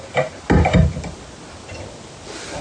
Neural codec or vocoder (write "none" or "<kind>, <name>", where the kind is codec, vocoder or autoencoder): none